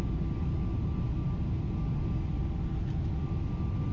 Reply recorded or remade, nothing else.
recorded